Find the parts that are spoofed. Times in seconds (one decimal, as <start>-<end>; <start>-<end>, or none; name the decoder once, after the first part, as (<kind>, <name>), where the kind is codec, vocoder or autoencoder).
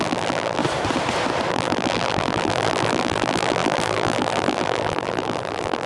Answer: 0.0-0.6 (vocoder, BigVGAN v2); 1.5-5.9